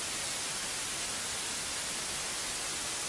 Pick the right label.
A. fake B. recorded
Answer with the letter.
B